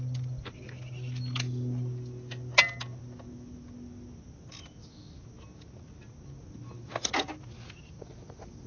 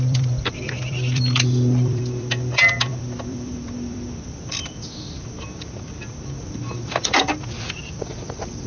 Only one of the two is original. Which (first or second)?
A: first